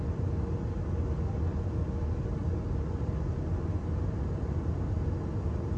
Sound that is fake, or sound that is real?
real